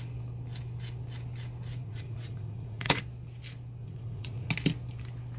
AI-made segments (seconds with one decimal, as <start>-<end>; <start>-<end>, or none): 1.7-3.0; 3.8-4.5